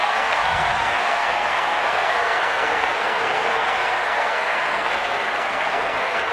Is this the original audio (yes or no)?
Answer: no